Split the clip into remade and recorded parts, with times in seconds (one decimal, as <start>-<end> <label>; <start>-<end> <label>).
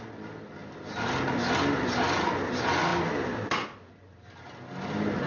0.0-5.3 recorded